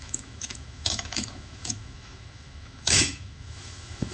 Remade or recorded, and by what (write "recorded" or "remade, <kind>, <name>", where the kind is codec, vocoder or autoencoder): remade, autoencoder, DAC-VAE